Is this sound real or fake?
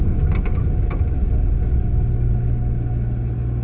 real